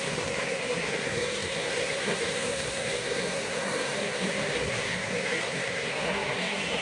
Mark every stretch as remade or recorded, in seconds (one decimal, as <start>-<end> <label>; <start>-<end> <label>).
0.0-6.8 remade